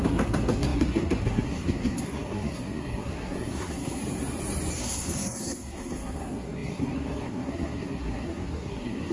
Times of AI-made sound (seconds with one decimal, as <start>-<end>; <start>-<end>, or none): 0.0-4.0; 4.8-9.1